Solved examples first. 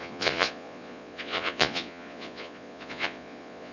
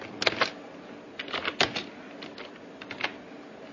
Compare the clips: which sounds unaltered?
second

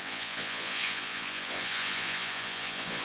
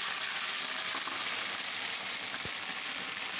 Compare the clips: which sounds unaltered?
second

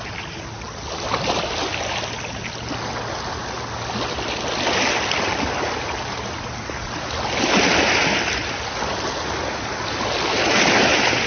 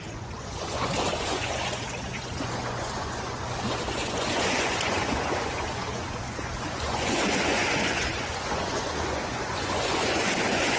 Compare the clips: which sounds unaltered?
first